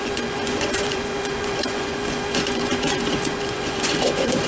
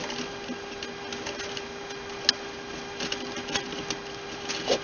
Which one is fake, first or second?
first